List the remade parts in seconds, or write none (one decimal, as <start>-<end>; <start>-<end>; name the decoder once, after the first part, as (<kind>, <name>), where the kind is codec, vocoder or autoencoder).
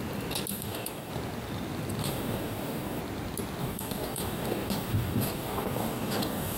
0.5-1.1 (codec, DAC); 2.0-3.0; 3.6-6.6